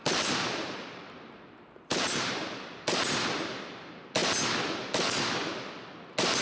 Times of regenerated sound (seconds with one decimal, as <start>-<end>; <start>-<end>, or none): 0.0-2.3

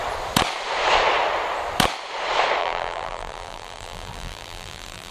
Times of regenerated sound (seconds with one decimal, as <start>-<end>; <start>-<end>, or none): 2.6-5.1